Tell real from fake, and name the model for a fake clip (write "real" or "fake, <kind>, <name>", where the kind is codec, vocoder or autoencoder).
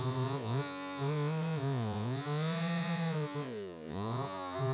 fake, vocoder, Vocos